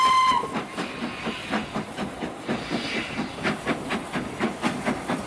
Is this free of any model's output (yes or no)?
yes